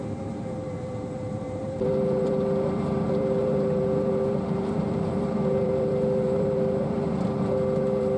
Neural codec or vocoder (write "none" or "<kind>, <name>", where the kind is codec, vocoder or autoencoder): vocoder, BigVGAN v2